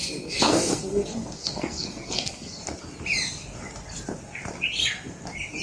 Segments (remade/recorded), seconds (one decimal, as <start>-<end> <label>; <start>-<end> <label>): 0.0-2.6 remade; 2.6-5.6 recorded